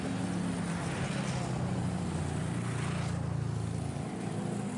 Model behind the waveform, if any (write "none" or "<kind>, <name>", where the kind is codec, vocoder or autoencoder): none